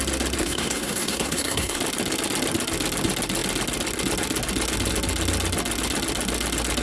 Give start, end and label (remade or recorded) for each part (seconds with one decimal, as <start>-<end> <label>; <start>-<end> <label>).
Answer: 0.0-0.4 recorded; 0.4-1.8 remade; 1.8-6.8 recorded